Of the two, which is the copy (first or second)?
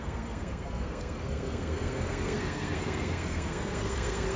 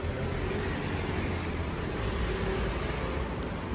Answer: first